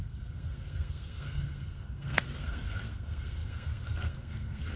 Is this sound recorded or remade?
remade